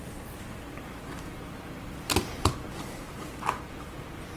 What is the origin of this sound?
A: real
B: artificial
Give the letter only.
B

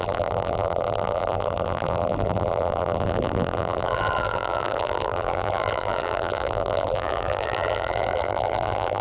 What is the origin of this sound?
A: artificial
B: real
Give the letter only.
A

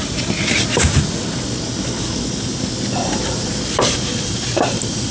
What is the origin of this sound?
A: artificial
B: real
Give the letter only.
B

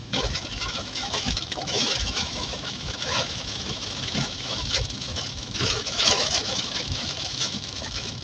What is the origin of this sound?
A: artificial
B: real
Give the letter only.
A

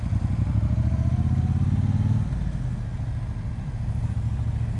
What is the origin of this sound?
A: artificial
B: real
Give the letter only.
B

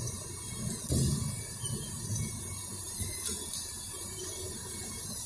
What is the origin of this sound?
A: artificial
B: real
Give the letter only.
A